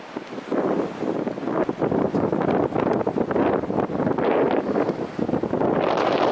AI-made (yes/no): no